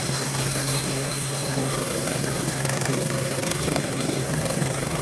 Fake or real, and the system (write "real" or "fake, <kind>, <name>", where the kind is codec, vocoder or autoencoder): fake, codec, SNAC